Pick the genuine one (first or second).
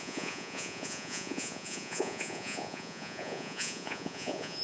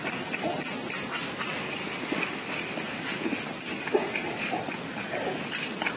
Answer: second